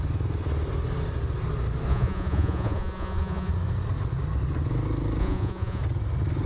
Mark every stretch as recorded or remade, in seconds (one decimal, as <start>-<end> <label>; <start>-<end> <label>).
0.0-1.9 recorded; 1.9-3.5 remade; 3.5-5.2 recorded; 5.2-5.8 remade; 5.8-6.5 recorded